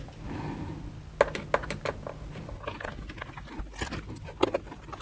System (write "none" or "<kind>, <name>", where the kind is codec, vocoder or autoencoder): none